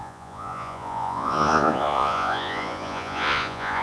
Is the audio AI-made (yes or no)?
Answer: yes